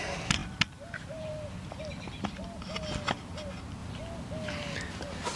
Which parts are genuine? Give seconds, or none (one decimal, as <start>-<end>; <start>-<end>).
0.0-5.4

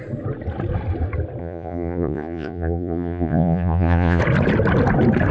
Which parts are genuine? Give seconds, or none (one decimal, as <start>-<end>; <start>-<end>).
0.0-1.4; 4.2-5.3